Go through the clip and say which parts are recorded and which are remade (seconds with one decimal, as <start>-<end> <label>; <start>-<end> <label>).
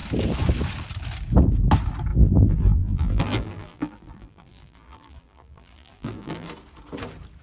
0.0-2.1 recorded; 2.1-6.5 remade; 6.5-7.4 recorded